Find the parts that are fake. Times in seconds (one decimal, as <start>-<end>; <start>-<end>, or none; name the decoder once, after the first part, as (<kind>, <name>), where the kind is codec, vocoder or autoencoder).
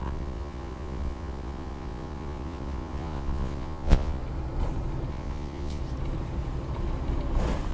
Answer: 0.0-4.2 (vocoder, Vocos); 5.1-5.8